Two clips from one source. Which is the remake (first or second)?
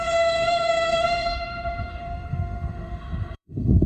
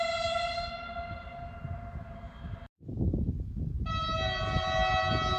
first